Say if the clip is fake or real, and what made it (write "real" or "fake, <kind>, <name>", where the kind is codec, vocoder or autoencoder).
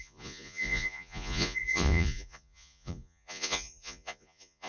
fake, vocoder, Vocos